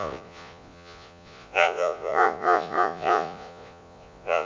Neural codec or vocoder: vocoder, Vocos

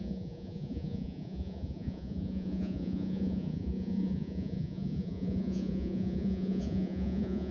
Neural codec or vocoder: vocoder, Vocos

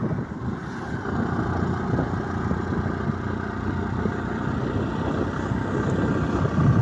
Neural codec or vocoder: none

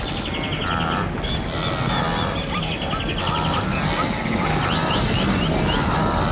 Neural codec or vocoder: none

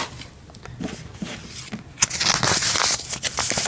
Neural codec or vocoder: none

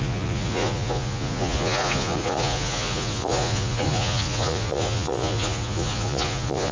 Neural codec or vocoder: vocoder, Vocos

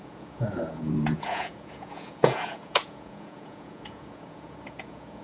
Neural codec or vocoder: vocoder, Vocos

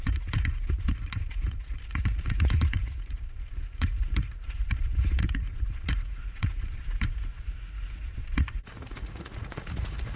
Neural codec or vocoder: vocoder, Vocos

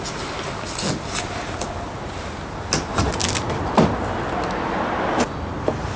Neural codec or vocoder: none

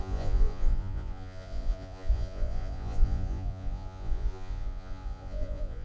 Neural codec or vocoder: vocoder, Vocos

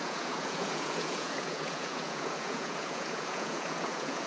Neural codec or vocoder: vocoder, Vocos